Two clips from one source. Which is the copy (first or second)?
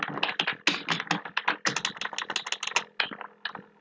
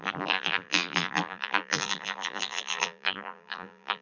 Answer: second